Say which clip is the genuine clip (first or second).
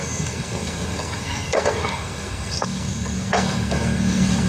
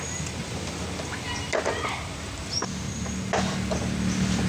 second